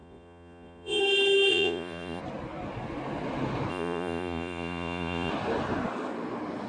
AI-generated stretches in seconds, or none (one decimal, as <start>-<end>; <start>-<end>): 0.0-1.0; 1.5-2.2; 3.7-5.3